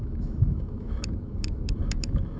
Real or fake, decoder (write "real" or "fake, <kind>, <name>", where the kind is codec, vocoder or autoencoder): fake, autoencoder, DAC-VAE